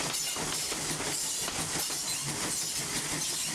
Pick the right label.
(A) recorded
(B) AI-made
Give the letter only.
A